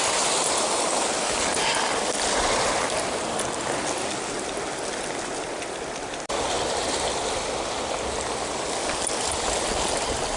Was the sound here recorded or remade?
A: recorded